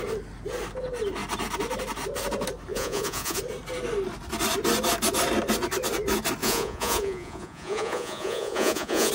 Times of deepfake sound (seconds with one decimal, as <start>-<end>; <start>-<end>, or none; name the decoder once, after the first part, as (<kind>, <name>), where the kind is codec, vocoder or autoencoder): 2.7-3.4 (vocoder, Vocos); 6.4-9.1